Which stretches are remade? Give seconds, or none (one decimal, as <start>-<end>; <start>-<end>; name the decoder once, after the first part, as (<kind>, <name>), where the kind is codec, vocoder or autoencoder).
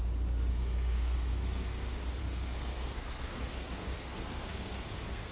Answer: 0.5-1.7 (codec, SNAC); 2.2-5.3